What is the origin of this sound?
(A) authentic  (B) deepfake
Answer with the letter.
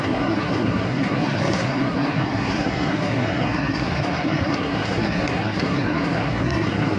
B